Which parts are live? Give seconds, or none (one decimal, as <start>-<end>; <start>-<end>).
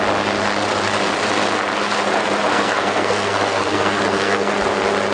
0.0-2.5; 4.5-5.1